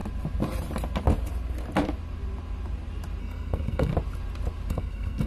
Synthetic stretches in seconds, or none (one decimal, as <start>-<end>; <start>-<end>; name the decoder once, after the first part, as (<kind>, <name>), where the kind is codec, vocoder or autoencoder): 3.2-3.9 (codec, SNAC); 4.7-5.3

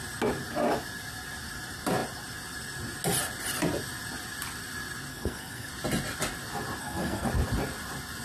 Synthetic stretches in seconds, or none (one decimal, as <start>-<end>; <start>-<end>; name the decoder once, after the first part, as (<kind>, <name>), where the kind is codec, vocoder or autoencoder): 5.1-5.7 (codec, SNAC); 6.8-7.3

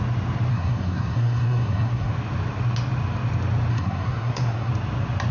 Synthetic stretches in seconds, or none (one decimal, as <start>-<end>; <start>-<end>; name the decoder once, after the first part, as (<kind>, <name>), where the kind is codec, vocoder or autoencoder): 0.5-2.1 (codec, SNAC); 3.7-4.7